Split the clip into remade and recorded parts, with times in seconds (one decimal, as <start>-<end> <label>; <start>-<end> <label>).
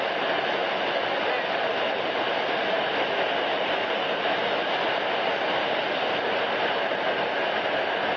0.0-8.2 recorded